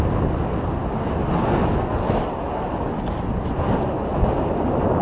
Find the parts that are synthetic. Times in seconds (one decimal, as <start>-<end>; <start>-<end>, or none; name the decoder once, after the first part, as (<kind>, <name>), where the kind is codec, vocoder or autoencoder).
none